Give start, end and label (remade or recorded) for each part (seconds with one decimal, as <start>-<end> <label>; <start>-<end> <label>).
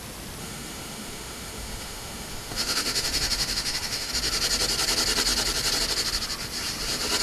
0.0-0.4 recorded; 0.4-4.1 remade; 4.1-7.2 recorded